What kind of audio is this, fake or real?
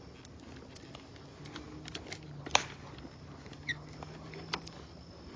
real